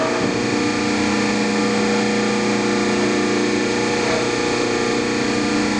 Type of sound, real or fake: real